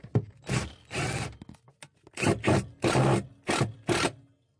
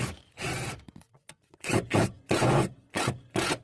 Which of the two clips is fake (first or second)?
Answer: second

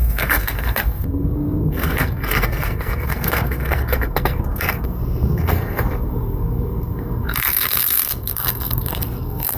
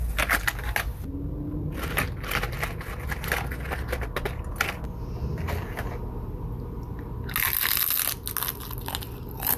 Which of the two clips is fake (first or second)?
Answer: first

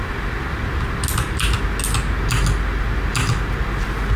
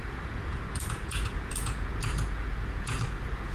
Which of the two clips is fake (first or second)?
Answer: second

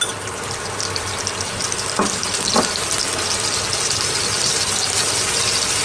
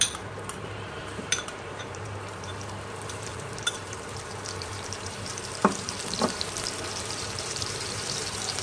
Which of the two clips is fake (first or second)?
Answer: second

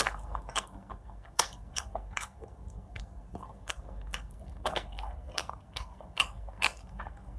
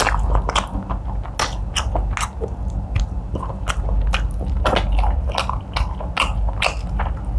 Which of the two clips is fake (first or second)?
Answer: first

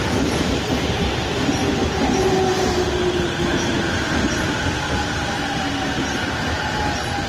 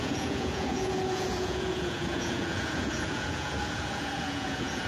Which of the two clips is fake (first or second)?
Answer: second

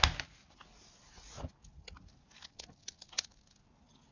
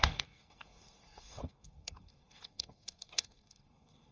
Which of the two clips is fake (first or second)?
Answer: second